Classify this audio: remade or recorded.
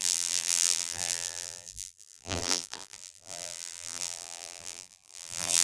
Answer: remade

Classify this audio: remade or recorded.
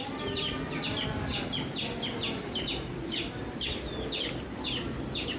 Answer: recorded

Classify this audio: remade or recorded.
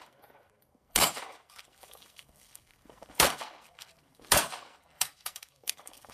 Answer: remade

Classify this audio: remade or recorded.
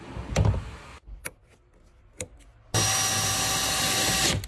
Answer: recorded